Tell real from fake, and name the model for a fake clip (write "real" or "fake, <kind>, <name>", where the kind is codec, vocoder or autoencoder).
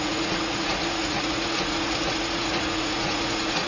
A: fake, vocoder, Vocos